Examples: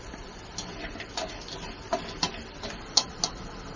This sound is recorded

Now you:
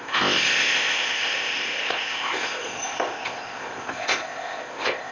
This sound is remade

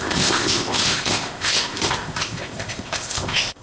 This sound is remade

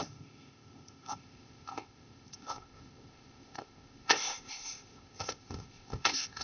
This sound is remade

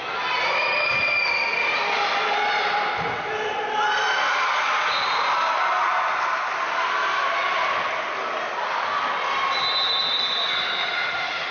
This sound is recorded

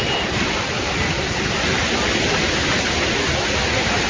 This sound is recorded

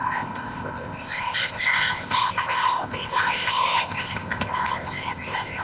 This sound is remade